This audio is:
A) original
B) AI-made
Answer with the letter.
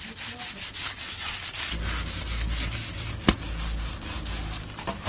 A